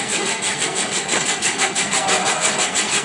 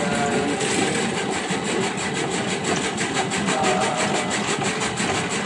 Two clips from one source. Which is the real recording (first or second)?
second